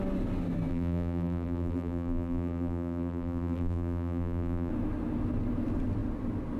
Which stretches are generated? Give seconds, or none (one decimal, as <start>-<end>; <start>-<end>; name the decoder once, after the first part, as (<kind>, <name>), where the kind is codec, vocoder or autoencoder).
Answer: 0.7-4.7 (vocoder, BigVGAN v2)

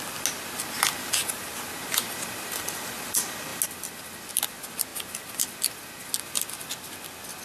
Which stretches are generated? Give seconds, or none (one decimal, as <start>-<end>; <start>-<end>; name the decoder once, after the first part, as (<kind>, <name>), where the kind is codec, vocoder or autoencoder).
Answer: 1.2-1.8 (vocoder, BigVGAN v2)

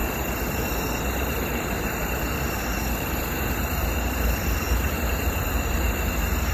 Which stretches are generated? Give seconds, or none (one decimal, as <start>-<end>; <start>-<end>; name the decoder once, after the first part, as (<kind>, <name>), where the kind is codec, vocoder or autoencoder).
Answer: 0.0-6.5 (vocoder, BigVGAN v2)

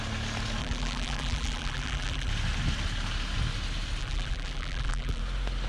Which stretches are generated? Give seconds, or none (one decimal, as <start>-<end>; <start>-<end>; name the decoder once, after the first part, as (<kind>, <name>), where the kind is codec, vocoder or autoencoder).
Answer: 0.6-2.3 (vocoder, BigVGAN v2); 4.0-5.2